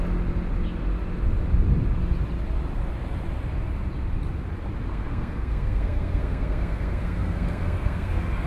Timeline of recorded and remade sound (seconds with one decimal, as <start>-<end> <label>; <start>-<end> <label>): 0.0-4.9 recorded; 4.9-8.5 remade